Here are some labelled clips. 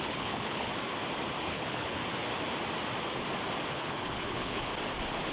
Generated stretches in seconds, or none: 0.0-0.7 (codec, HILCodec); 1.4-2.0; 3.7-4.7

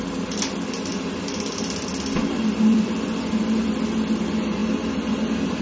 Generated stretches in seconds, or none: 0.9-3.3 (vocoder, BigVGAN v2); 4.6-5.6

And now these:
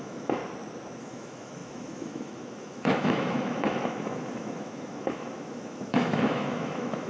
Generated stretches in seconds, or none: 0.0-0.4 (autoencoder, DAC-VAE); 1.0-7.1

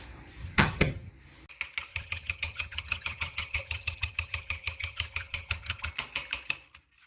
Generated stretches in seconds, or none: 0.4-1.1 (vocoder, HiFi-GAN); 1.9-5.9

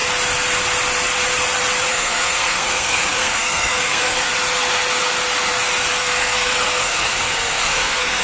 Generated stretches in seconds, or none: 1.9-4.3 (codec, SNAC); 6.0-8.2